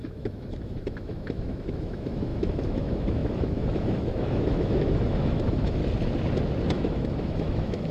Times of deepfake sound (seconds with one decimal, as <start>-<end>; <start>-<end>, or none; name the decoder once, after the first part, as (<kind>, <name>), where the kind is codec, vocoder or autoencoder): 0.0-5.8 (autoencoder, DAC-VAE); 6.7-7.9